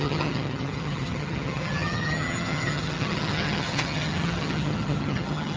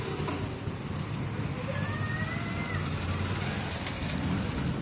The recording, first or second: second